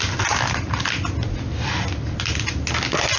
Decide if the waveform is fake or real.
real